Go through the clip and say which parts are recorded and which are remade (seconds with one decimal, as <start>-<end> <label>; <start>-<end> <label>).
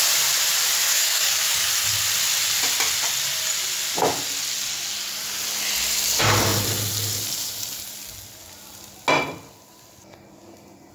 0.0-0.9 recorded; 0.9-1.7 remade; 1.7-10.9 recorded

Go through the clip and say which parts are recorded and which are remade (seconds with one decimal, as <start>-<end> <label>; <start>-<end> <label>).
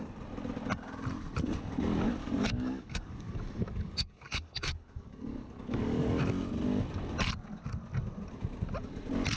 0.0-2.2 recorded; 2.2-6.2 remade; 6.2-9.4 recorded